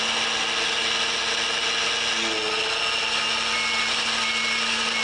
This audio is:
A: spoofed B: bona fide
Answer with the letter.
B